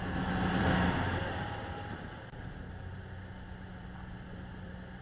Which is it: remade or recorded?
remade